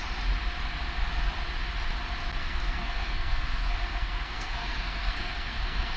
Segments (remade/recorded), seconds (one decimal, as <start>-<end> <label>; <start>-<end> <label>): 0.0-2.4 recorded; 2.4-6.0 remade